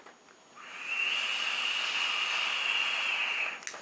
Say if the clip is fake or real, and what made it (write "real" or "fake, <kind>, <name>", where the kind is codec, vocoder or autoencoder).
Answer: real